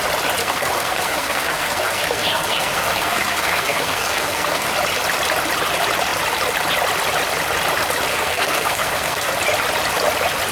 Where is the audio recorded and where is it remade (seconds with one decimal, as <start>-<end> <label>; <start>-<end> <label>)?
0.0-0.4 recorded; 0.4-4.7 remade; 4.7-8.1 recorded; 8.1-9.3 remade; 9.3-10.5 recorded